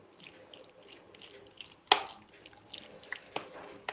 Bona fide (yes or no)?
yes